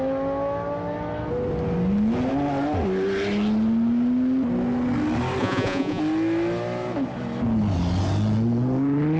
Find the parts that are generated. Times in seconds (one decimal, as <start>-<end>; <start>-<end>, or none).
5.4-6.0